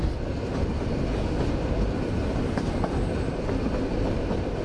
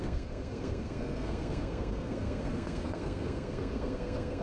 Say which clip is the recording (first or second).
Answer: first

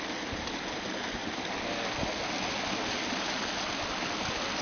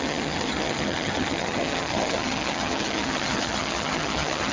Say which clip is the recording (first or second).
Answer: first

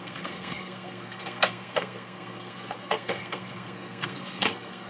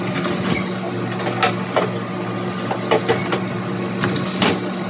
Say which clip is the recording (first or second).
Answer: second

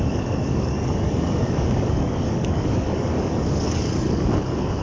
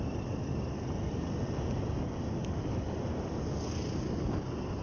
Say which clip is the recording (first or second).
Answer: second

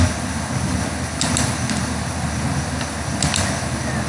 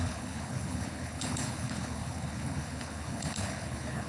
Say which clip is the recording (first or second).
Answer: first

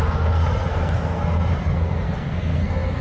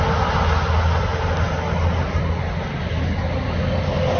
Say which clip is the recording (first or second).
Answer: second